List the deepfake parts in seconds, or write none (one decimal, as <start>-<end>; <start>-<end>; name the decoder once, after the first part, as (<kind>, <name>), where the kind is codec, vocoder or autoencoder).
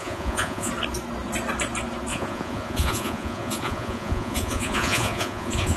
0.0-0.7 (vocoder, Vocos); 2.1-5.8